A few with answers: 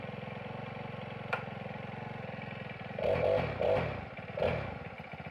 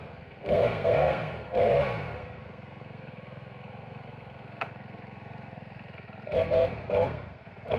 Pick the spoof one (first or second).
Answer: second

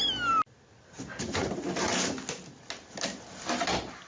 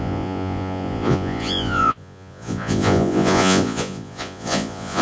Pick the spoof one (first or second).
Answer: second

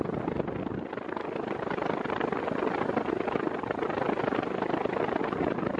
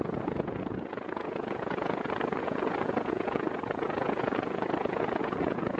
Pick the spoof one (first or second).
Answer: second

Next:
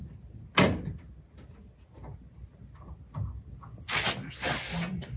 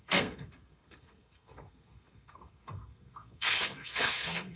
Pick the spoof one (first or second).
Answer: second